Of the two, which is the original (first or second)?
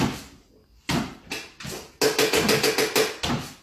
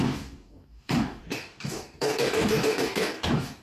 first